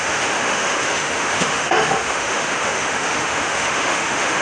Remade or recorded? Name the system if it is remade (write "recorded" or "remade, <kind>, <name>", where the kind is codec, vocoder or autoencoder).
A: remade, autoencoder, DAC-VAE